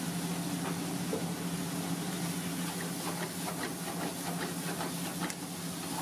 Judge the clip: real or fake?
real